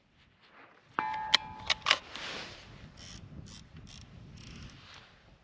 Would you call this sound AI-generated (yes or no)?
no